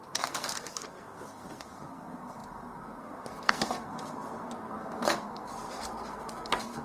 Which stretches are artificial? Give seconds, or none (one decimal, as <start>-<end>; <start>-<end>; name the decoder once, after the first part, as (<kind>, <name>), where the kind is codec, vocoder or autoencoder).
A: 0.0-6.8 (codec, SNAC)